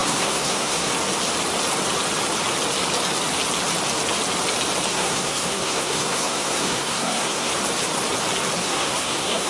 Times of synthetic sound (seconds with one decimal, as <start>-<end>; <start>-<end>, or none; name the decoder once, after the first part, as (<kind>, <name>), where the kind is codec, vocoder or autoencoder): 0.0-0.9 (codec, SNAC); 4.9-7.5; 8.6-9.5